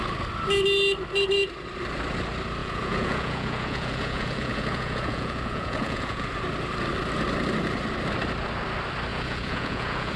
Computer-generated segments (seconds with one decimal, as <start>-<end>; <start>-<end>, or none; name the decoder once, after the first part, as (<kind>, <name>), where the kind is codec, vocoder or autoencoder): 2.6-6.3 (vocoder, Vocos); 9.1-10.2